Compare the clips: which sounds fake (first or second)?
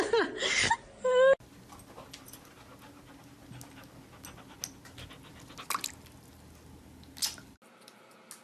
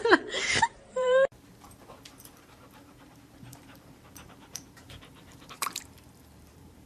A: second